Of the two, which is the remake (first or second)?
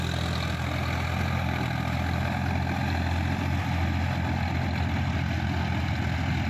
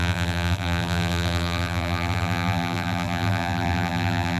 second